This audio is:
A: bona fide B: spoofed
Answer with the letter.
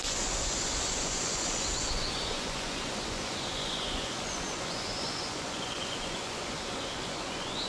B